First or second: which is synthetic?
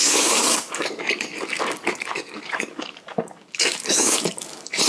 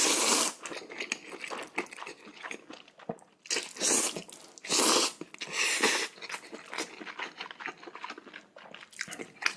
first